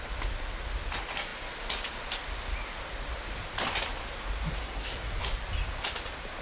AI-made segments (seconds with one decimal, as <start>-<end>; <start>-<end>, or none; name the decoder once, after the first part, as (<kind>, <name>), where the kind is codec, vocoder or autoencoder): 4.6-5.2 (codec, SNAC)